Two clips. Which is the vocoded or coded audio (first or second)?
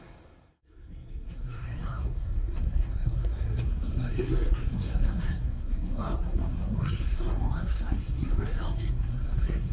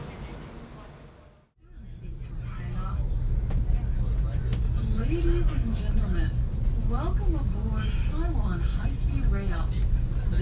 first